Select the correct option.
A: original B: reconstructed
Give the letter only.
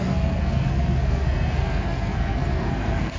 B